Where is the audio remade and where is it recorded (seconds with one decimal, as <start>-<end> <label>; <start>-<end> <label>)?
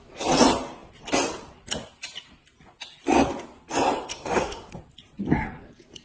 0.0-4.1 recorded; 4.1-4.7 remade; 4.7-6.0 recorded